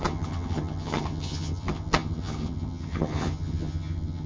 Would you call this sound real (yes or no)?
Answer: no